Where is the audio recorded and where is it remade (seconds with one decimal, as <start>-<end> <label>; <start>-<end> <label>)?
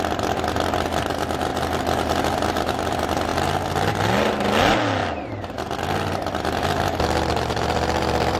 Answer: 0.0-5.0 recorded; 5.0-8.4 remade